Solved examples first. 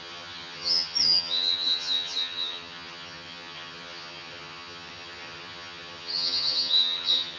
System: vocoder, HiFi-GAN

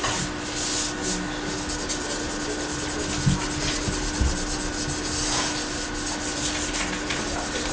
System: none